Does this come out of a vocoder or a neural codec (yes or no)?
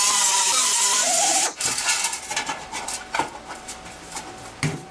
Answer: yes